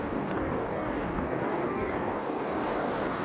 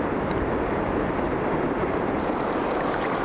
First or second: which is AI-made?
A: first